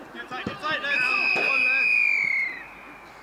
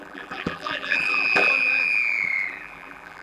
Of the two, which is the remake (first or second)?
second